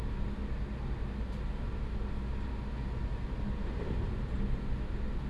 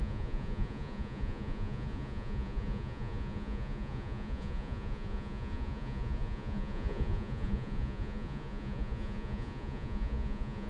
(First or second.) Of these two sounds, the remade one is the second